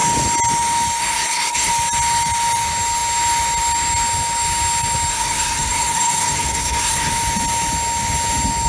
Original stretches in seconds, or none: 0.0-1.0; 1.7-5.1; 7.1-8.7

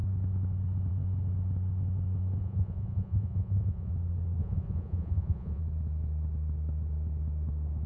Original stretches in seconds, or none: 0.0-2.4; 3.9-4.4; 5.6-7.9

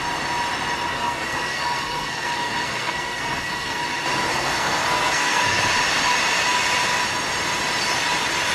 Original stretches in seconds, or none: 0.0-0.9; 3.8-4.3; 5.6-8.5